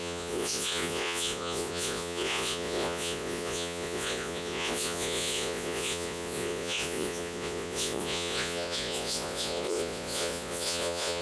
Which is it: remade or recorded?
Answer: remade